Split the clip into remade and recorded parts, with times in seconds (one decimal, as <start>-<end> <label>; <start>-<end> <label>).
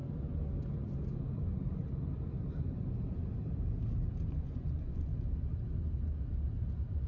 0.0-4.3 recorded; 4.3-5.1 remade; 5.1-7.1 recorded